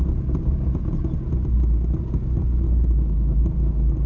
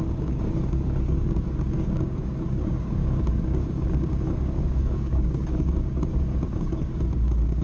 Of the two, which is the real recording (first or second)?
first